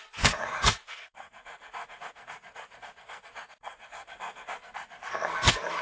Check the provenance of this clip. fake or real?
fake